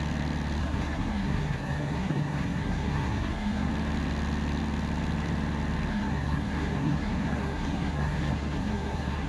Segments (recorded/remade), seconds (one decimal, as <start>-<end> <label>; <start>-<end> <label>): 0.0-0.6 recorded; 0.6-3.7 remade; 3.7-5.9 recorded; 5.9-9.3 remade